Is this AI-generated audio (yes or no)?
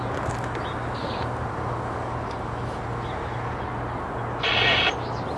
no